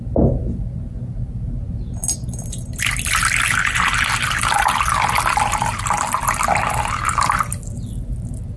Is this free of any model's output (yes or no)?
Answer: yes